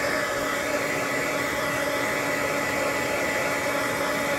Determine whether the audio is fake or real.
real